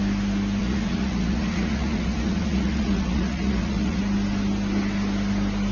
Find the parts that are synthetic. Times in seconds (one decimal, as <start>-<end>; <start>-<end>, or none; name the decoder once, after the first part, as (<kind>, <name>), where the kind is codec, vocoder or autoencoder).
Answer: 0.6-4.0 (vocoder, Vocos)